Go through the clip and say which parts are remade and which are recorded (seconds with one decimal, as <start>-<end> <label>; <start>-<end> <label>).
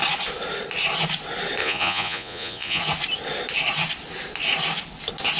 0.0-1.6 recorded; 1.6-2.8 remade; 2.8-5.4 recorded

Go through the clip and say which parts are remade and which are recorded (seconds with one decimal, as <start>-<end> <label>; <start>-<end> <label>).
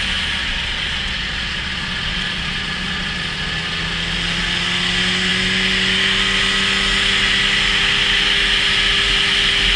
0.0-0.4 recorded; 0.4-3.5 remade; 3.5-9.8 recorded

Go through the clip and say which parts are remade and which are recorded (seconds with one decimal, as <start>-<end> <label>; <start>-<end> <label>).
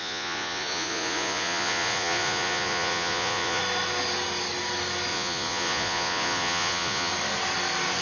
0.0-3.6 remade; 3.6-5.1 recorded; 5.1-7.1 remade; 7.1-8.0 recorded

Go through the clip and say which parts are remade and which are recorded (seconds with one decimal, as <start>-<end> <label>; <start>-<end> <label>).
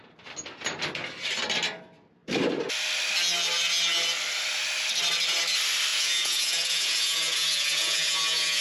0.0-5.9 recorded; 5.9-8.6 remade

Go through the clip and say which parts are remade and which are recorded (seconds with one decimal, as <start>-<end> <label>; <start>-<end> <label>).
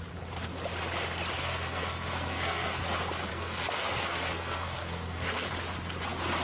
0.0-1.4 recorded; 1.4-2.8 remade; 2.8-3.3 recorded; 3.3-5.5 remade; 5.5-6.4 recorded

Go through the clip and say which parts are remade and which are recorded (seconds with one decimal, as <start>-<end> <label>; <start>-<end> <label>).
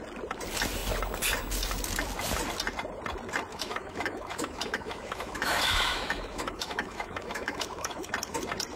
0.0-3.5 recorded; 3.5-8.1 remade; 8.1-8.8 recorded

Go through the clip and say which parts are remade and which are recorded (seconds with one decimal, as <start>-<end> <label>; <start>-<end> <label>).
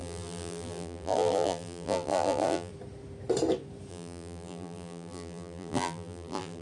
0.0-2.7 remade; 2.7-3.9 recorded; 3.9-6.6 remade